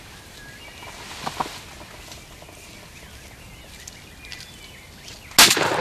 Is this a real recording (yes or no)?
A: yes